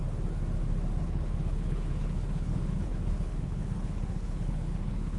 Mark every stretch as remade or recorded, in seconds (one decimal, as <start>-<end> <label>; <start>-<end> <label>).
0.0-1.0 recorded; 1.0-5.2 remade